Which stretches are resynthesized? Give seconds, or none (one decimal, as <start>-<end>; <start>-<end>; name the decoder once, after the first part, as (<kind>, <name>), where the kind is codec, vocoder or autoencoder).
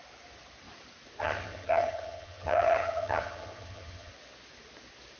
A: 1.2-4.1 (vocoder, HiFi-GAN)